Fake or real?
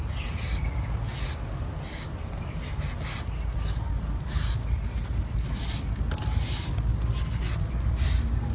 real